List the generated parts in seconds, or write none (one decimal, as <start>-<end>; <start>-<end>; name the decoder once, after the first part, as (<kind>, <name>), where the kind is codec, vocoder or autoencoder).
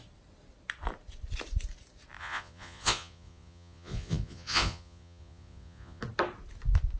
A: 2.2-6.0 (vocoder, Vocos)